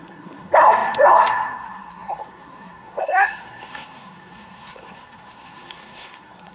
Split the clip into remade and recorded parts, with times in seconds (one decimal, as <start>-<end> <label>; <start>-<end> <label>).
0.0-6.5 remade